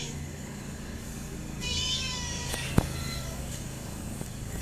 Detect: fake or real fake